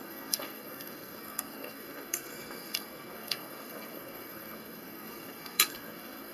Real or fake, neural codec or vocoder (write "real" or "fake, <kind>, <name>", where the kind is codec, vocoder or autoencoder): fake, codec, SNAC